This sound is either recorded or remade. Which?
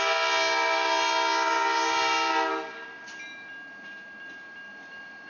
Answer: recorded